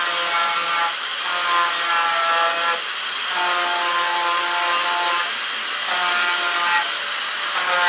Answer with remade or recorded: recorded